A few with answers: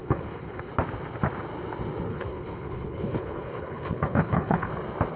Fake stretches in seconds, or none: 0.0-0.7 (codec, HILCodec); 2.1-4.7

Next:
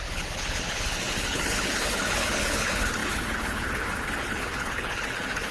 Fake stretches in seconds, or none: 0.0-5.5 (codec, HILCodec)

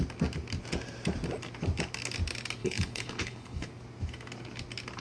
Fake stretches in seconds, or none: 2.6-3.7 (codec, HILCodec)

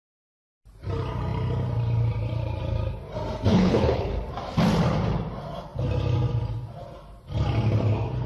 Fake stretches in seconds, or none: 3.5-4.1 (codec, HILCodec)

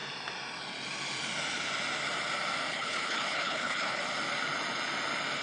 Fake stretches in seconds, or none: 2.7-4.0 (codec, HILCodec)

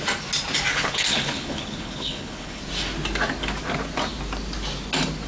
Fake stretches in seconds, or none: 0.7-2.6 (codec, HILCodec)